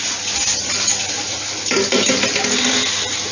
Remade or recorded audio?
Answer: recorded